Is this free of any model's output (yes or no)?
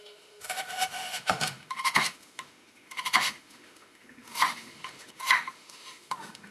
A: no